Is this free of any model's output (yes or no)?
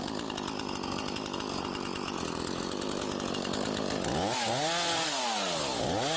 yes